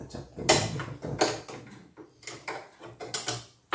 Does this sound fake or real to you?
real